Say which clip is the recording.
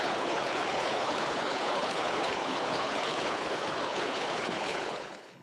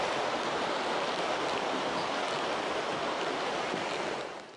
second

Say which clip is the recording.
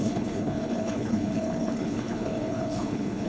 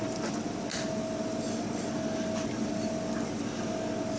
second